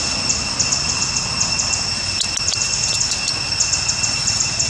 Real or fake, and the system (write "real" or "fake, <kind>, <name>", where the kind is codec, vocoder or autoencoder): real